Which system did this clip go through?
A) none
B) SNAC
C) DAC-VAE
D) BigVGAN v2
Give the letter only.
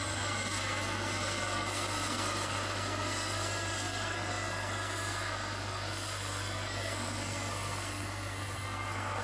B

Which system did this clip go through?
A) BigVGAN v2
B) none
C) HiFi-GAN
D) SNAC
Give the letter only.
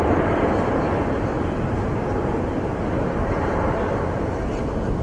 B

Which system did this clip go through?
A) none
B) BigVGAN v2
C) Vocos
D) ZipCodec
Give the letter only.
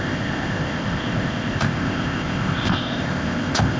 D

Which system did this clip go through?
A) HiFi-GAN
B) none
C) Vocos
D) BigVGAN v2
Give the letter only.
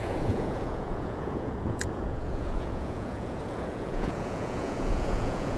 C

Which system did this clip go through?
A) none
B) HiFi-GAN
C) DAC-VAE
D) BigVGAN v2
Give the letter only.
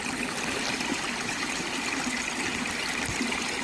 A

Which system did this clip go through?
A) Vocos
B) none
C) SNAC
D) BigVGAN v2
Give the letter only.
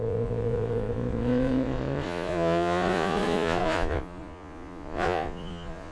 A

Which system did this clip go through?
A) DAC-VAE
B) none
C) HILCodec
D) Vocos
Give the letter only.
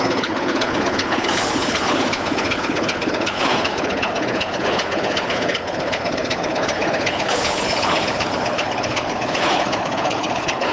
C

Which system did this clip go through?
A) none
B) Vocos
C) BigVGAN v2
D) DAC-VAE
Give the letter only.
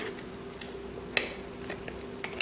A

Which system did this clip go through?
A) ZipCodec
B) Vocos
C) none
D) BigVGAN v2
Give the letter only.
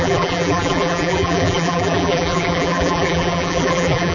D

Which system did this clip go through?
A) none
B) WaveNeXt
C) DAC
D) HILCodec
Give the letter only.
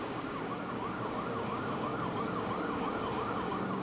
C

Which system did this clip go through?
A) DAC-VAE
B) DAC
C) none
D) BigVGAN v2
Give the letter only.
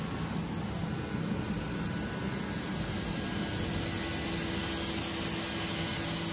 C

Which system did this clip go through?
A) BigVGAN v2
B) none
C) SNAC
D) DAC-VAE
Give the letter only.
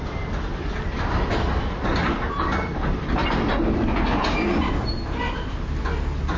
B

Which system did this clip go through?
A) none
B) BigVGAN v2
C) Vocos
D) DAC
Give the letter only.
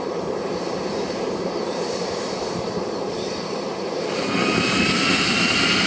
B